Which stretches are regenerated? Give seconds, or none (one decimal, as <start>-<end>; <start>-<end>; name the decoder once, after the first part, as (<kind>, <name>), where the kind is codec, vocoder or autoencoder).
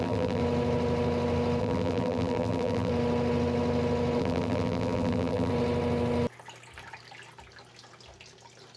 0.0-0.4 (vocoder, BigVGAN v2); 1.6-2.9; 4.2-5.5